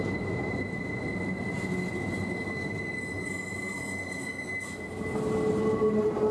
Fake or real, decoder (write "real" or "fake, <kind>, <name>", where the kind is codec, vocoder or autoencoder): real